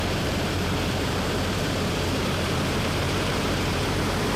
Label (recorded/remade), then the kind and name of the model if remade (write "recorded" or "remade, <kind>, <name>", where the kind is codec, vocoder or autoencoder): remade, vocoder, BigVGAN v2